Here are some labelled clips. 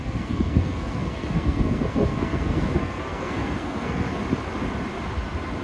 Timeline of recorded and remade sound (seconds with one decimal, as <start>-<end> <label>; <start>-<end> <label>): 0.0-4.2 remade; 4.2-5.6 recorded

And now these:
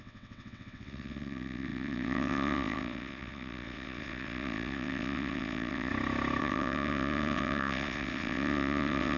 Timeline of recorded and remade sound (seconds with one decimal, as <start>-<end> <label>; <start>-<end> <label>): 0.0-5.9 remade; 5.9-6.4 recorded; 6.4-9.2 remade

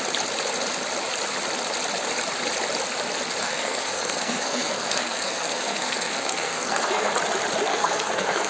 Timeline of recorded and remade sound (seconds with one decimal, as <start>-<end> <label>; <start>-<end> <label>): 0.0-3.4 recorded; 3.4-7.1 remade; 7.1-7.7 recorded; 7.7-8.5 remade